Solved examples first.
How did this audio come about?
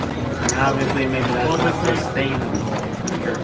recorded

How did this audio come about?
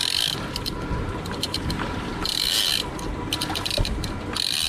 remade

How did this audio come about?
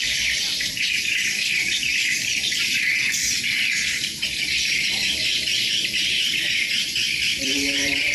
remade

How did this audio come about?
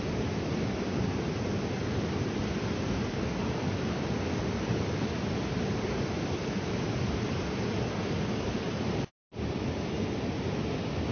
remade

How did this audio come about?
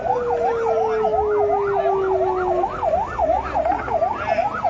recorded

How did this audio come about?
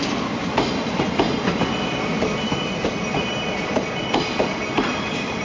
remade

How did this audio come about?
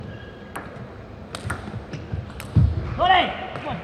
recorded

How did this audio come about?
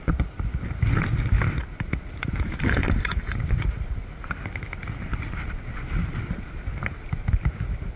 recorded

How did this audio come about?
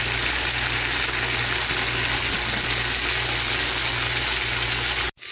recorded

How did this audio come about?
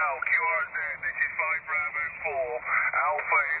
recorded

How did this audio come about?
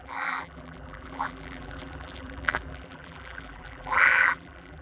remade